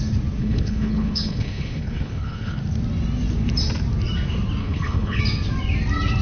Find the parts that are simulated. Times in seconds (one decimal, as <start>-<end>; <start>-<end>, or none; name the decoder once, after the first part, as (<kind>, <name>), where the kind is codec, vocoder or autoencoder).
0.4-2.6 (codec, HILCodec); 4.6-5.2

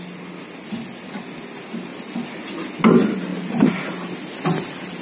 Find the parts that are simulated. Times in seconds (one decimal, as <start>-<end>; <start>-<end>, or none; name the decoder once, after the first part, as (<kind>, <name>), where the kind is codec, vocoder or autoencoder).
none

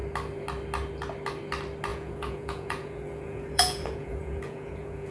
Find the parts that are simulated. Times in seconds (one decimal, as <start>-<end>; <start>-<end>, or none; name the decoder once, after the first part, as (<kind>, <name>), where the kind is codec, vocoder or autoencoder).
1.9-5.1 (vocoder, Vocos)

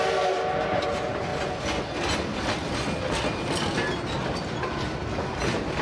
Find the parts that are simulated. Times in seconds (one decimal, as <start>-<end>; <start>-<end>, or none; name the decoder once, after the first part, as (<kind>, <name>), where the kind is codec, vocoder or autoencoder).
none

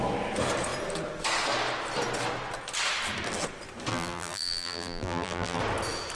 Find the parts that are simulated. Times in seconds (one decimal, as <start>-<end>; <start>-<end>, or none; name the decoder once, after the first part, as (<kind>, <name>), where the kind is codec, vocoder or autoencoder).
3.9-5.6 (vocoder, BigVGAN v2)

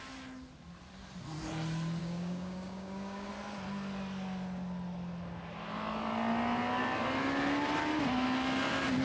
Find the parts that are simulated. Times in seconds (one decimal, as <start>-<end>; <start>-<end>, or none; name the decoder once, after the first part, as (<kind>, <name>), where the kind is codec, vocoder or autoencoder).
2.0-3.3 (codec, DAC)

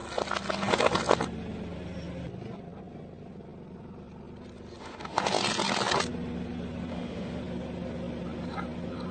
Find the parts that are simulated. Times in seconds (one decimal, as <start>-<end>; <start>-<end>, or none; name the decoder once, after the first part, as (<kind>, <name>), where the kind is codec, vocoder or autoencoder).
4.8-5.3 (autoencoder, DAC-VAE); 6.9-7.4